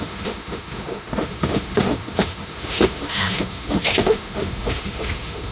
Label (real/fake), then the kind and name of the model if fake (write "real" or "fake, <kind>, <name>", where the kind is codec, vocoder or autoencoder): fake, autoencoder, DAC-VAE